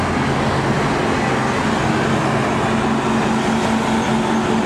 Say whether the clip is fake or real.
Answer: real